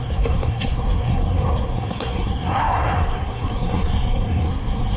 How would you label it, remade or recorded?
remade